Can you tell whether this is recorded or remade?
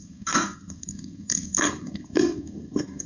remade